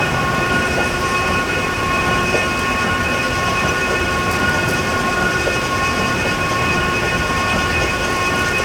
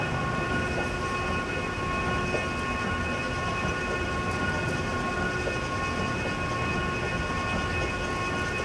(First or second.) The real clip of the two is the second